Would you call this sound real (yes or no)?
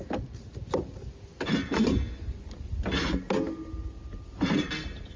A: yes